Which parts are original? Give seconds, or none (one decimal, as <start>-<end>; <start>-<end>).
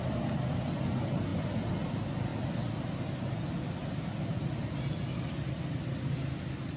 0.0-6.8